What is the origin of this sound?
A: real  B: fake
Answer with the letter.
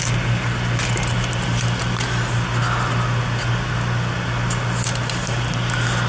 A